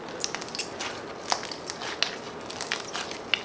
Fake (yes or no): no